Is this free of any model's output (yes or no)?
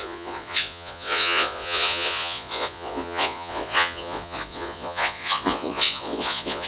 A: no